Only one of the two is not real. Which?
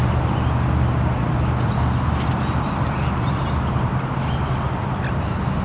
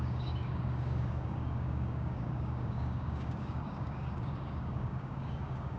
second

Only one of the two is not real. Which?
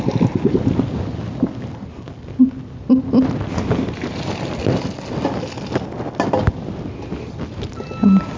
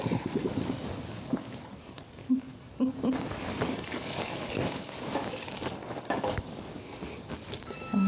second